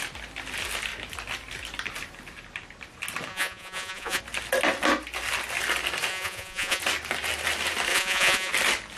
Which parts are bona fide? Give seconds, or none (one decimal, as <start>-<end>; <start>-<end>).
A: 0.0-3.3; 4.2-6.1; 6.8-7.9; 8.5-9.0